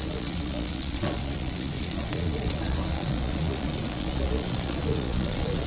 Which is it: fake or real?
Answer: fake